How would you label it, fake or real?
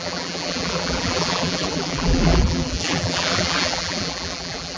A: fake